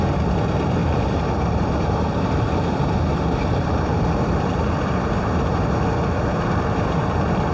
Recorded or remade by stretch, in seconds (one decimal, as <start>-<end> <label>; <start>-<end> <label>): 0.0-0.8 recorded; 0.8-2.5 remade; 2.5-3.1 recorded; 3.1-5.2 remade; 5.2-7.5 recorded